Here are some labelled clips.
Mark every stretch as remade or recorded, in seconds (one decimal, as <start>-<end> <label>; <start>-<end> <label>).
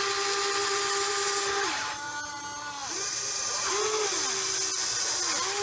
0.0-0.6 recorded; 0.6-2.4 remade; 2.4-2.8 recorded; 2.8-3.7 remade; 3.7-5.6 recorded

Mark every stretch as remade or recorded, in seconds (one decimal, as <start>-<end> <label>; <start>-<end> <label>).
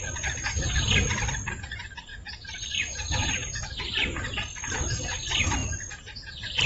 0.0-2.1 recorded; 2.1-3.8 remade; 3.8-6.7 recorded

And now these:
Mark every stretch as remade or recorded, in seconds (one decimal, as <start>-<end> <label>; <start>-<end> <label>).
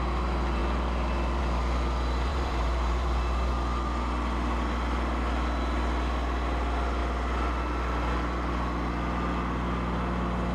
0.0-2.3 recorded; 2.3-3.5 remade; 3.5-10.5 recorded